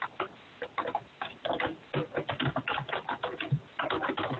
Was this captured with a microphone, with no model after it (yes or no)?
yes